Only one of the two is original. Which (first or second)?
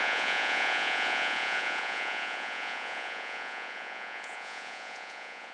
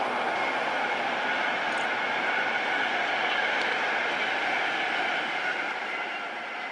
second